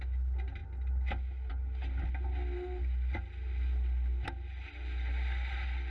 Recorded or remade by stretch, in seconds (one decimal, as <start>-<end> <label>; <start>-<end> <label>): 0.0-5.9 recorded